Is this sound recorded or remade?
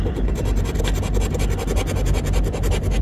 recorded